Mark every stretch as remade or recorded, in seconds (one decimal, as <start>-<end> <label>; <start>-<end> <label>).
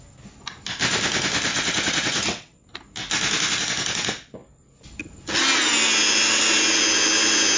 0.0-1.5 recorded; 1.5-2.7 remade; 2.7-7.6 recorded